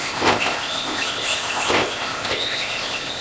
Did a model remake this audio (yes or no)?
yes